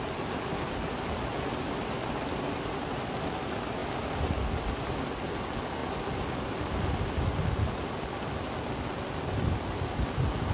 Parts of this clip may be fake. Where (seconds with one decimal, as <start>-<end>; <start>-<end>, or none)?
none